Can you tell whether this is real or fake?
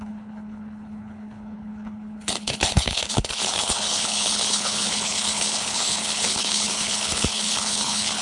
fake